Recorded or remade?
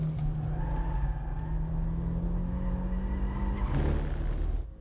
recorded